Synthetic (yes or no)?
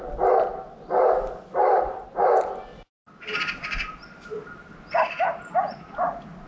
no